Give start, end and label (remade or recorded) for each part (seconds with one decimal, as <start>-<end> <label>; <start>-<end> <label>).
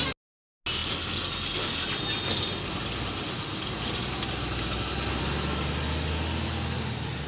0.0-7.3 recorded